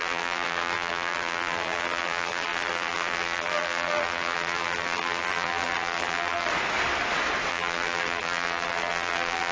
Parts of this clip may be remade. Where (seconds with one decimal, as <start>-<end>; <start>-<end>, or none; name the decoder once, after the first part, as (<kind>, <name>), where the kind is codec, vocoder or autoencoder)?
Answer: 0.0-6.5 (vocoder, BigVGAN v2); 7.5-9.5